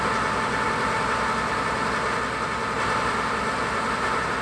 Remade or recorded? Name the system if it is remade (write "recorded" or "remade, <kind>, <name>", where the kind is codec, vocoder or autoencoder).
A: recorded